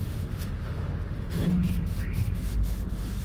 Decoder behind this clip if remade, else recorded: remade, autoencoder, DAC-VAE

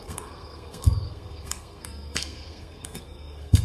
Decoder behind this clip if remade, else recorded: remade, codec, SNAC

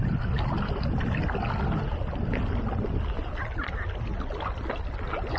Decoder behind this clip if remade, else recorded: recorded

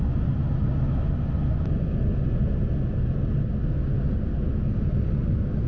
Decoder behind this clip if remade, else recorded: recorded